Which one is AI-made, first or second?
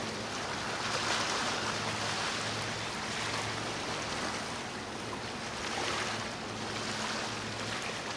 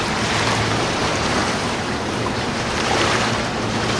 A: second